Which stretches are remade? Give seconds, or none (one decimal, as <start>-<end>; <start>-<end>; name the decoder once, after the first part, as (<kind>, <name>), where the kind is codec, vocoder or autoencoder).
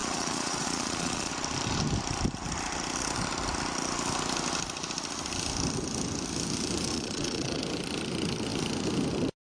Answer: 0.0-1.3 (vocoder, Vocos); 6.9-7.6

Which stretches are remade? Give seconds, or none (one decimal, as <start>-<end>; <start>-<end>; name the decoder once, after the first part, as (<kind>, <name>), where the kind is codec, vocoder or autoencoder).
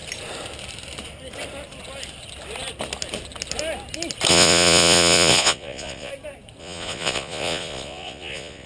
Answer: 4.3-6.1 (vocoder, Vocos); 6.6-8.7